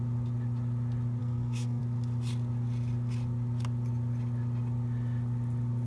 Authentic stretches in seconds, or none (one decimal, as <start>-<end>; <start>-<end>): 0.0-1.2; 1.8-5.9